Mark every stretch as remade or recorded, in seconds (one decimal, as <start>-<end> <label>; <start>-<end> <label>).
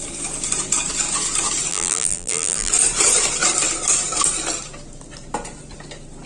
0.0-1.7 recorded; 1.7-2.7 remade; 2.7-6.3 recorded